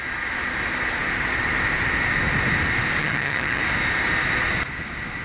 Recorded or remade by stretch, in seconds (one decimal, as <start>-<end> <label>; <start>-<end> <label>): 0.0-3.0 recorded; 3.0-3.6 remade; 3.6-5.2 recorded